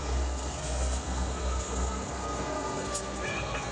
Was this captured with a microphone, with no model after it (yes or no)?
no